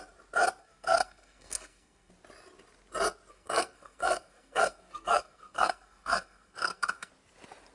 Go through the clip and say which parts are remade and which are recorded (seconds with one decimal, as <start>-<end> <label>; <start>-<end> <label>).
0.0-0.6 recorded; 0.6-2.1 remade; 2.1-3.3 recorded; 3.3-7.1 remade; 7.1-7.7 recorded